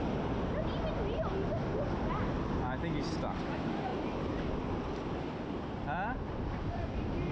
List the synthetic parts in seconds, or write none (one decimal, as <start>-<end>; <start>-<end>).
1.7-2.4; 3.9-4.8